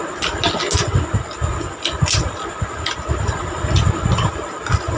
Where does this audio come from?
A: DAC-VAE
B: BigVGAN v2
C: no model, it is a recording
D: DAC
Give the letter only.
C